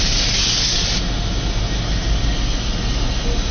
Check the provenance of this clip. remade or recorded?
recorded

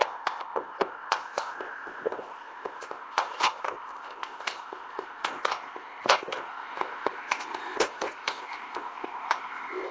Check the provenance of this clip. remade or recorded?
remade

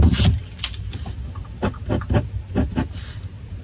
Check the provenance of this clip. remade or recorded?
recorded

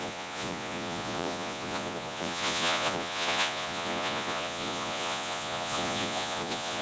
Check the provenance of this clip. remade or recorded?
remade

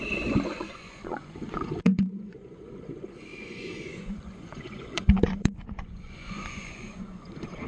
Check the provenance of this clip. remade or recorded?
remade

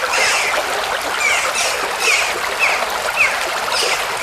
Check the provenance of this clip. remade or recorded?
recorded